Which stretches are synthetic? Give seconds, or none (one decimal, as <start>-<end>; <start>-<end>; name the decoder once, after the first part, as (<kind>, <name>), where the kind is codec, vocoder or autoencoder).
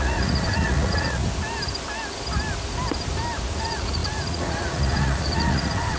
0.0-1.2 (vocoder, Vocos); 3.6-6.0